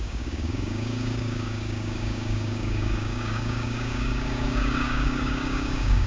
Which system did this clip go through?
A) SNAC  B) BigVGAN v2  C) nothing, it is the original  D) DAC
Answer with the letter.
D